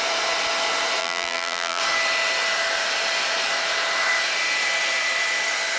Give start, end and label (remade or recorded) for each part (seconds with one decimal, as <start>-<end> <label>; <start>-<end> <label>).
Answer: 0.0-1.0 recorded; 1.0-1.8 remade; 1.8-5.8 recorded